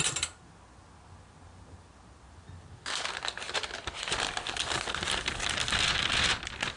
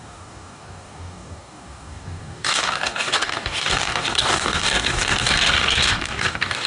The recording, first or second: first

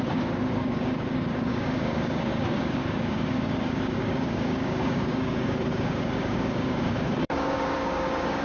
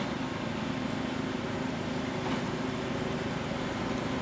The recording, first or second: second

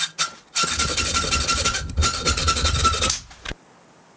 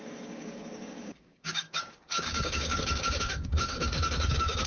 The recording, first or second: first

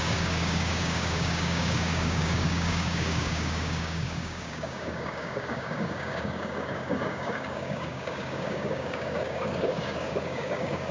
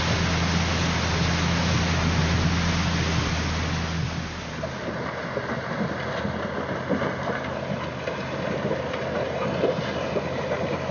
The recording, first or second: second